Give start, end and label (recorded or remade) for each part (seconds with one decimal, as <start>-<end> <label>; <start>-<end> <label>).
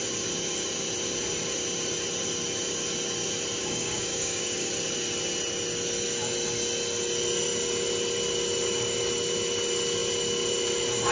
0.0-3.6 recorded; 3.6-4.7 remade; 4.7-11.1 recorded